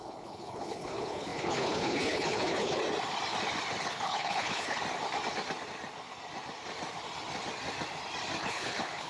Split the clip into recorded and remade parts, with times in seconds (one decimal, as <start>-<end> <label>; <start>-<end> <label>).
0.0-2.8 remade; 2.8-3.8 recorded; 3.8-4.8 remade; 4.8-8.4 recorded; 8.4-9.1 remade